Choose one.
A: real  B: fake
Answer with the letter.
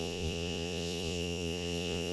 B